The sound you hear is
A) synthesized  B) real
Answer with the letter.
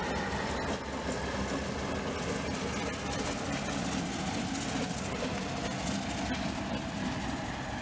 B